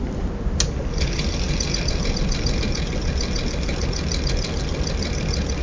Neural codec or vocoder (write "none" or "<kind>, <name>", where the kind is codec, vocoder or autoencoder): none